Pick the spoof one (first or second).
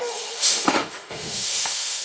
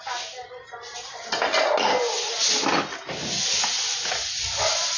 first